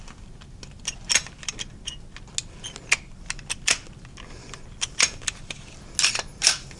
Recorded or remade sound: recorded